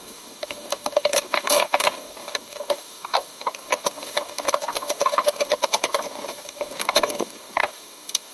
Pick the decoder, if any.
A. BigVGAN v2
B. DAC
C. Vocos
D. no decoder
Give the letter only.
B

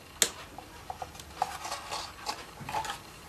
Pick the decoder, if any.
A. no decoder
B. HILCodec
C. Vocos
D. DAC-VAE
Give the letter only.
A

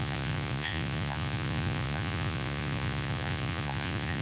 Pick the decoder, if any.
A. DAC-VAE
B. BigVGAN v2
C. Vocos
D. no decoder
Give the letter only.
C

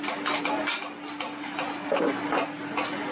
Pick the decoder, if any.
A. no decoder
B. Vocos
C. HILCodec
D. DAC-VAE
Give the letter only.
A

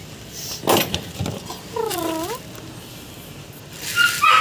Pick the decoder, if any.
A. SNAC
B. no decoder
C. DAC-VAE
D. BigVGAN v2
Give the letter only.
B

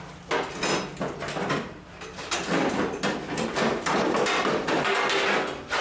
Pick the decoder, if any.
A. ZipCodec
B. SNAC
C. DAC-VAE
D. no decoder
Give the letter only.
D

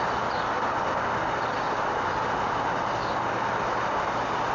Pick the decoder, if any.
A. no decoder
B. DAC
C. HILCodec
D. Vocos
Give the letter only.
A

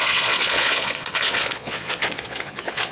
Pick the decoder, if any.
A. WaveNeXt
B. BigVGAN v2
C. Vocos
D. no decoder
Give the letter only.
C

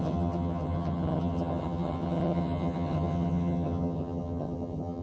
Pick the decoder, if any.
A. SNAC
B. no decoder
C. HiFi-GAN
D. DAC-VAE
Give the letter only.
C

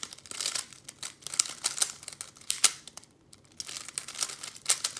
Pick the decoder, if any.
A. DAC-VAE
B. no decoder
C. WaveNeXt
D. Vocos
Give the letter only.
B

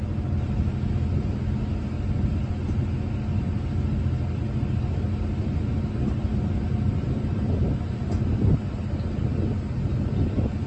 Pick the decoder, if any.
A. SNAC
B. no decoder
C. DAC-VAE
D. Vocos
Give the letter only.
B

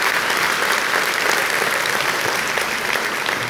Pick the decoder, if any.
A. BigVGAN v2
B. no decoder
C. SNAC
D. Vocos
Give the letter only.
A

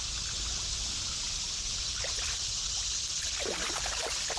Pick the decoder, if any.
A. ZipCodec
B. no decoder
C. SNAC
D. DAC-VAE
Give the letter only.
B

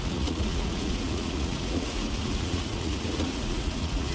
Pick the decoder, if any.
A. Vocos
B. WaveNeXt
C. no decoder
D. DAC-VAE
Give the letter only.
A